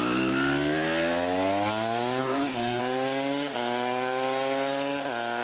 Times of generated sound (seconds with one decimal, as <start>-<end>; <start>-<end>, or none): 2.2-2.8